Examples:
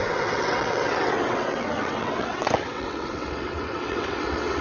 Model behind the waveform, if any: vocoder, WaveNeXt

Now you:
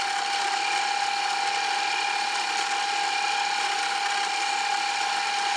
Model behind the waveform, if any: none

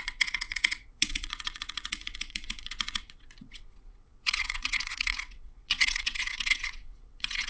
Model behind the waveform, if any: vocoder, WaveNeXt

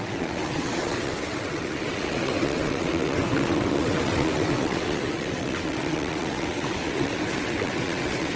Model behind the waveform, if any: vocoder, WaveNeXt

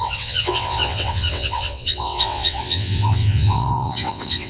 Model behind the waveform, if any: vocoder, WaveNeXt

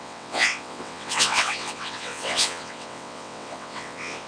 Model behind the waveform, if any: vocoder, WaveNeXt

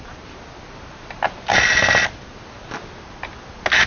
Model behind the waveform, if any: none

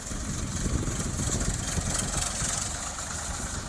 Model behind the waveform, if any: none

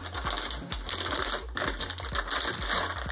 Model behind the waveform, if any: none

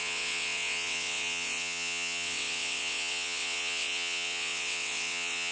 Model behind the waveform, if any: vocoder, WaveNeXt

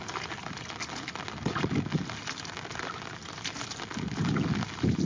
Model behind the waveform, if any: none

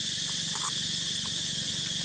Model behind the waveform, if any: none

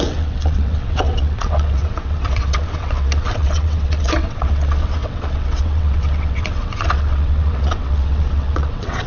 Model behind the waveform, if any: vocoder, WaveNeXt